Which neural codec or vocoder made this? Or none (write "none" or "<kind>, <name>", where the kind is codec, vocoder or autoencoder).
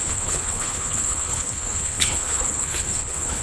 codec, HILCodec